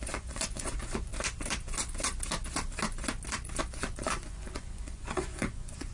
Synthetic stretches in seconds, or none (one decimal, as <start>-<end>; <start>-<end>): 0.0-1.1; 3.6-5.9

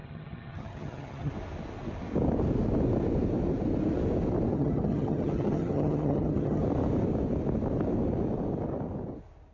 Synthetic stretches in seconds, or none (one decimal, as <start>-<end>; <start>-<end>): 0.0-1.3; 4.5-6.6

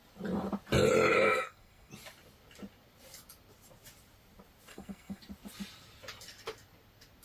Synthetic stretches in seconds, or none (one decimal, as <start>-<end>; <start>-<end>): 1.1-1.9; 4.7-5.2

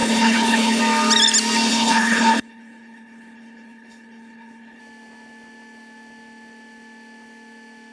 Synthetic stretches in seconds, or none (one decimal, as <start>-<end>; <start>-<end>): 0.0-0.8; 1.7-4.8